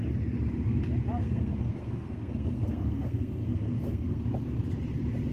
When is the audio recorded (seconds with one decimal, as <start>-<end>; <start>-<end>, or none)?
0.0-1.2; 4.2-5.3